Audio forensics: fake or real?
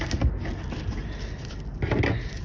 real